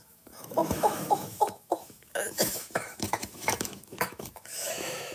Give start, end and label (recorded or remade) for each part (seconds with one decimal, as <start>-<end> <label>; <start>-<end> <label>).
0.0-5.1 remade